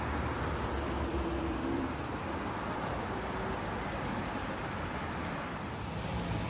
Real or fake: fake